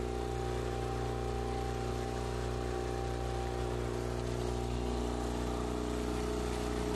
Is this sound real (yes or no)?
yes